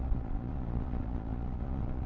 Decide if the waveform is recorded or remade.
remade